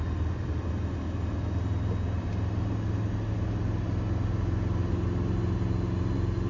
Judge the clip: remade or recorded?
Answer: recorded